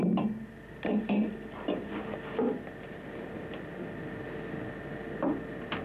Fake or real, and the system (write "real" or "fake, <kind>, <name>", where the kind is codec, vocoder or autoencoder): real